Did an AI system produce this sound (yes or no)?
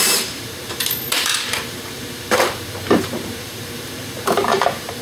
yes